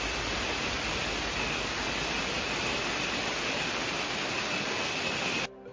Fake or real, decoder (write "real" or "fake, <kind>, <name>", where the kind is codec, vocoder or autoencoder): real